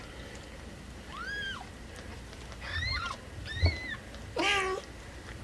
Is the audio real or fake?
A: real